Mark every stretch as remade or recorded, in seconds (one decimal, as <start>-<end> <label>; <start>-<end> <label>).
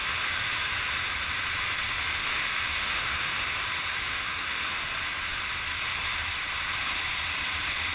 0.0-0.6 remade; 0.6-2.1 recorded; 2.1-3.4 remade; 3.4-4.1 recorded; 4.1-4.8 remade; 4.8-7.9 recorded